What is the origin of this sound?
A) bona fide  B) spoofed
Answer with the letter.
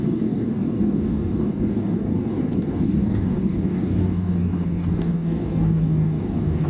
B